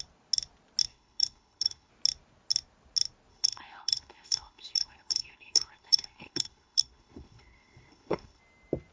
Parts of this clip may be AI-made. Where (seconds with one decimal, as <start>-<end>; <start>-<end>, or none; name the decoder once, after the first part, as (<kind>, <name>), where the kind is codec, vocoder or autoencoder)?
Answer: 0.9-1.9 (codec, HILCodec); 3.3-8.4